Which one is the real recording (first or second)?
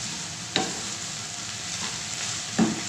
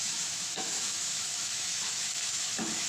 first